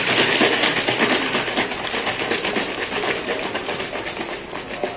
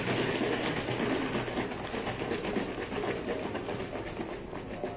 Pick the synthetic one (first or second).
first